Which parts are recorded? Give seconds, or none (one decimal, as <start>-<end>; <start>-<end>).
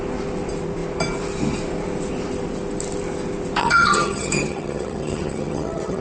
0.0-3.6